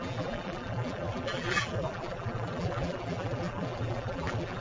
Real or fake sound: fake